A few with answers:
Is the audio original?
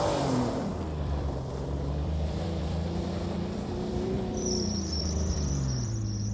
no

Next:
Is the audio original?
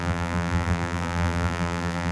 no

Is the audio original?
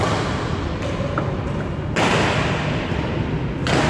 yes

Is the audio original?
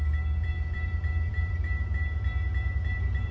no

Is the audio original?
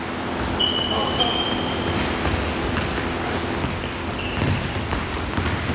yes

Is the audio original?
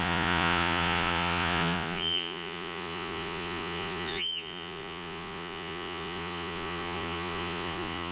no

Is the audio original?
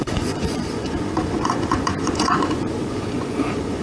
no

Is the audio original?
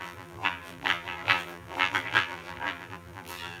no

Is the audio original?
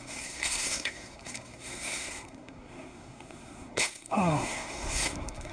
no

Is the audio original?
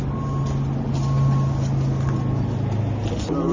yes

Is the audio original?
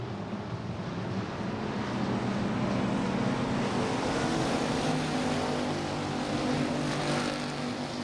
yes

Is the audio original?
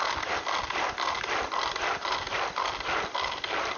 yes